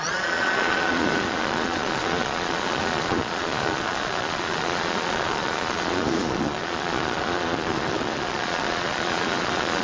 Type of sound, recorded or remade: remade